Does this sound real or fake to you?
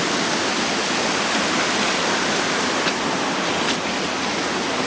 real